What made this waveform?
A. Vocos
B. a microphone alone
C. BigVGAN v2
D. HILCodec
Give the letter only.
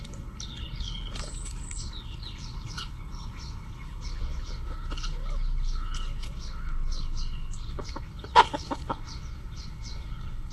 D